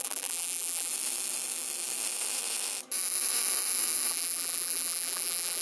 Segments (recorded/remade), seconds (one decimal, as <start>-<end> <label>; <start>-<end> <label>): 0.0-0.9 remade; 0.9-4.1 recorded; 4.1-5.6 remade